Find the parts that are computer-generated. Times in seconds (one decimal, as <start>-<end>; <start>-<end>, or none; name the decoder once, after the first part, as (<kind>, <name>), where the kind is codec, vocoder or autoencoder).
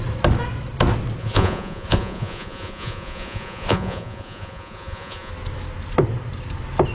1.2-5.3 (vocoder, Vocos)